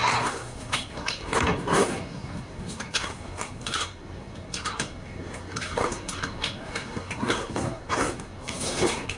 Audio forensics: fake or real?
fake